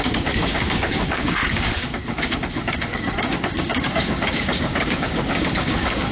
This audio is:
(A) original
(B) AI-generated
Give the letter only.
B